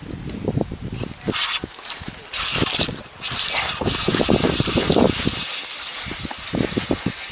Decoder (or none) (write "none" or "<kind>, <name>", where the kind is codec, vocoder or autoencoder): none